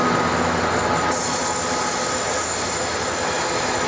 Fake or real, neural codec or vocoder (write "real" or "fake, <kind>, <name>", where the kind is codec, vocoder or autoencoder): real